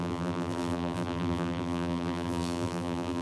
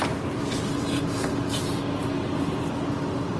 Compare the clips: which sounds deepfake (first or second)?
first